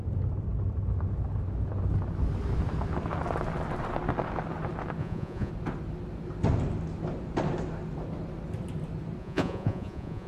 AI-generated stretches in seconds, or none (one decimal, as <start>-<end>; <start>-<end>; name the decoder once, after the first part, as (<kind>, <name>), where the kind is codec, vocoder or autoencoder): 5.0-5.5 (vocoder, Vocos); 9.2-10.3